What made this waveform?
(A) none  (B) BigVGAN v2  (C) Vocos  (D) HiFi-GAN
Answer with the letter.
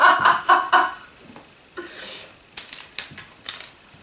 A